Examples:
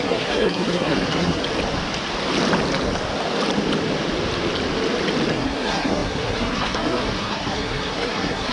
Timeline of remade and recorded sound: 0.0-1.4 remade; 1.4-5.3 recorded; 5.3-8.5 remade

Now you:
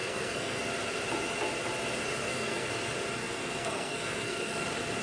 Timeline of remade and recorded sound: 0.0-0.6 remade; 0.6-2.2 recorded; 2.2-2.7 remade; 2.7-3.2 recorded; 3.2-4.6 remade; 4.6-5.0 recorded

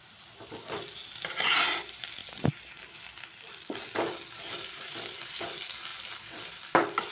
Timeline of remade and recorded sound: 0.0-7.1 recorded

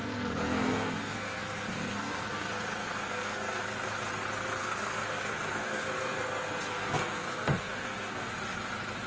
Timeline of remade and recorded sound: 0.0-3.6 remade; 3.6-4.6 recorded; 4.6-8.3 remade; 8.3-9.1 recorded